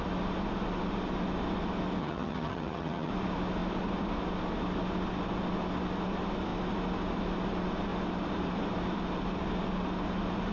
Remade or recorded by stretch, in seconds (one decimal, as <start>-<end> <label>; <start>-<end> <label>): 0.0-2.0 recorded; 2.0-3.1 remade; 3.1-10.5 recorded